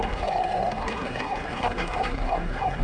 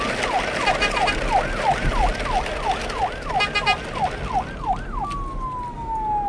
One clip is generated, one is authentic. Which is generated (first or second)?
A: first